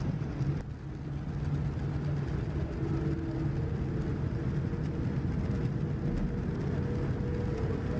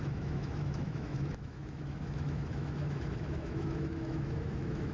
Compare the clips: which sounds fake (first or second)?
second